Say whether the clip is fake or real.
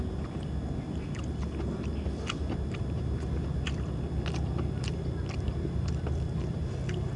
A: real